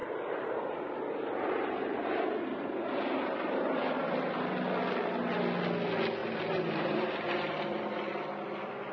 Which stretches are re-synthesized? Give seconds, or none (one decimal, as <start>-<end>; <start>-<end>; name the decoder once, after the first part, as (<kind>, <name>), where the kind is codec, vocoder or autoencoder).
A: 0.0-4.2 (vocoder, BigVGAN v2); 6.2-8.1